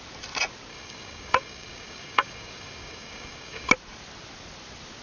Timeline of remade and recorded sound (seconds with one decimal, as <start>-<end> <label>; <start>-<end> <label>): 0.0-0.7 recorded; 0.7-3.7 remade; 3.7-5.0 recorded